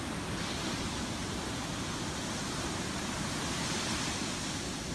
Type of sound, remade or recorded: recorded